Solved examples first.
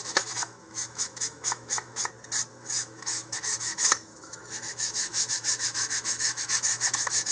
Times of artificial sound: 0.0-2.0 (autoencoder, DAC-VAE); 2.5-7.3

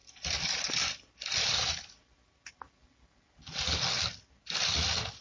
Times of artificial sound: none

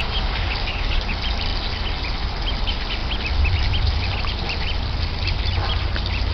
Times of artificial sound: 0.0-1.1 (codec, DAC)